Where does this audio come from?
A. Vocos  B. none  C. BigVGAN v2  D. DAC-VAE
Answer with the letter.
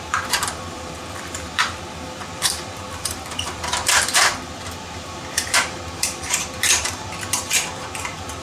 C